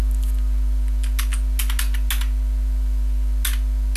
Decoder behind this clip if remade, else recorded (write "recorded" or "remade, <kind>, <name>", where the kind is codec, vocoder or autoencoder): recorded